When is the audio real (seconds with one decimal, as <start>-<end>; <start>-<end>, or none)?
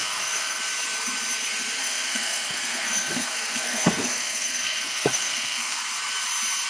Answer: 0.6-1.8; 5.8-6.7